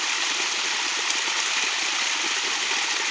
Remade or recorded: recorded